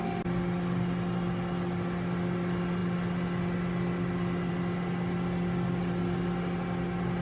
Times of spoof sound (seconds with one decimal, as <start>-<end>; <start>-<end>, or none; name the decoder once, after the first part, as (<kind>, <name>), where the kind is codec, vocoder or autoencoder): none